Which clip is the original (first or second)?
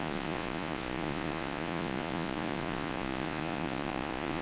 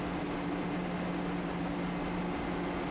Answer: second